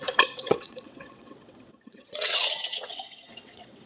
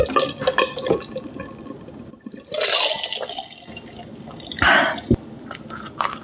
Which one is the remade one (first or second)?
first